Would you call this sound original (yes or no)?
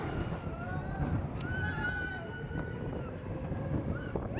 yes